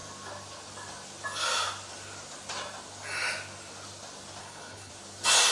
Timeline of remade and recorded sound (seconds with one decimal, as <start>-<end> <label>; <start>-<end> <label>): 0.0-4.4 recorded; 4.4-4.9 remade; 4.9-5.5 recorded